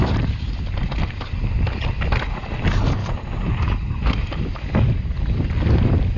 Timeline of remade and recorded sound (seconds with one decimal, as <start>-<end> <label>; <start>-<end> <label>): 0.0-0.5 remade; 0.5-3.0 recorded; 3.0-4.3 remade; 4.3-6.2 recorded